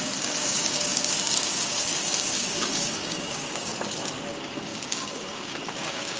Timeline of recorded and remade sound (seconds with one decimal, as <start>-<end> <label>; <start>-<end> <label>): 0.0-3.7 remade; 3.7-4.3 recorded; 4.3-6.2 remade